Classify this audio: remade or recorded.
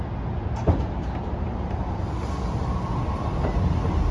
recorded